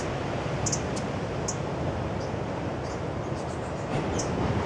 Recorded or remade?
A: recorded